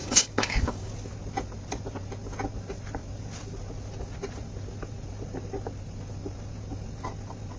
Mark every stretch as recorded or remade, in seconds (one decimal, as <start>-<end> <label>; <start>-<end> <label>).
0.0-0.9 remade; 0.9-7.6 recorded